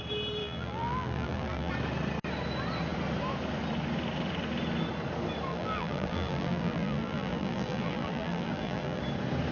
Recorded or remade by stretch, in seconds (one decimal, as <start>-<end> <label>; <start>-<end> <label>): 0.0-0.4 recorded; 0.4-1.7 remade; 1.7-5.5 recorded; 5.5-9.0 remade; 9.0-9.5 recorded